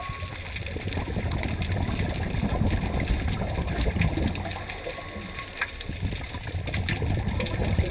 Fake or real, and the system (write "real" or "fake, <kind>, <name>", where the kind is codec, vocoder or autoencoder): real